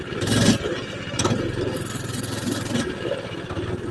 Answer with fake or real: real